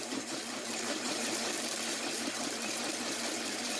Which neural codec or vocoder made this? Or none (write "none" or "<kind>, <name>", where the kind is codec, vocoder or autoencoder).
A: vocoder, BigVGAN v2